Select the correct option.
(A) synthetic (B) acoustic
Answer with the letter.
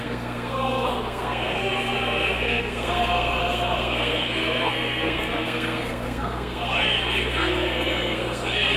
A